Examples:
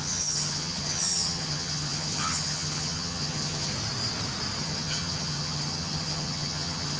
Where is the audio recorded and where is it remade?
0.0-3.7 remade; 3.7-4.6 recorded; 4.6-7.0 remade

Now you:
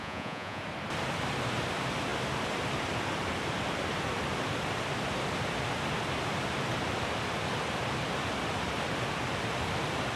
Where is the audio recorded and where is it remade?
0.0-0.6 remade; 0.6-10.2 recorded

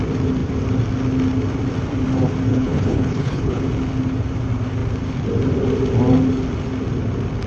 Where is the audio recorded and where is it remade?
0.0-2.5 recorded; 2.5-3.6 remade; 3.6-7.5 recorded

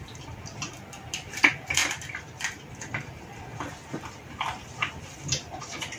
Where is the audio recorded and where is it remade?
0.0-3.5 recorded; 3.5-5.1 remade; 5.1-6.0 recorded

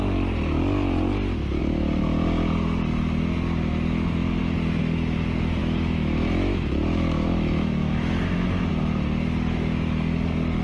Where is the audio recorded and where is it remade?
0.0-5.6 recorded; 5.6-8.7 remade; 8.7-10.6 recorded

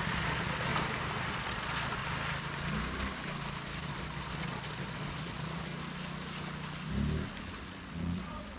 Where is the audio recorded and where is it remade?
0.0-0.7 remade; 0.7-1.3 recorded; 1.3-2.0 remade; 2.0-3.8 recorded; 3.8-5.7 remade; 5.7-7.4 recorded; 7.4-8.6 remade

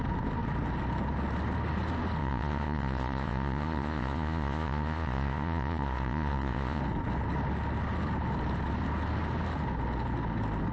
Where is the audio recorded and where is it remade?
0.0-2.2 recorded; 2.2-6.8 remade; 6.8-10.7 recorded

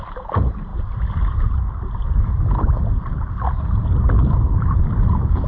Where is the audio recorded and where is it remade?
0.0-5.5 recorded